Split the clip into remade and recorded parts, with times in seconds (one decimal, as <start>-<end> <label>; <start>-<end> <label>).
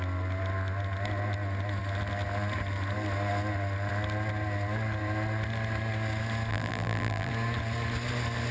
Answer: 0.0-6.5 recorded; 6.5-7.3 remade; 7.3-8.5 recorded